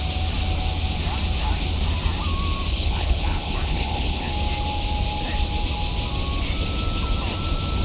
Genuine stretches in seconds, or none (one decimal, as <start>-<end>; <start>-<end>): 0.0-2.7; 4.3-7.8